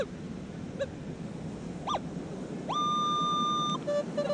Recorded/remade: recorded